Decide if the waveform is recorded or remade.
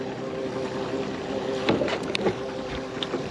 recorded